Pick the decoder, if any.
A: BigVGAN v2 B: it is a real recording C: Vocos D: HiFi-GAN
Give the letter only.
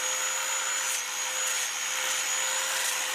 B